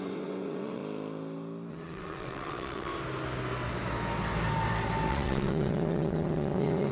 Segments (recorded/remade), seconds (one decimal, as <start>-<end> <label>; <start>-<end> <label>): 0.0-0.8 remade; 0.8-1.7 recorded; 1.7-2.9 remade; 2.9-5.1 recorded; 5.1-6.9 remade

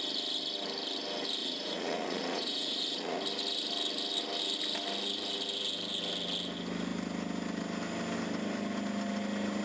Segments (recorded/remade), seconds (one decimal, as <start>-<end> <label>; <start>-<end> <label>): 0.0-1.4 recorded; 1.4-3.2 remade; 3.2-9.6 recorded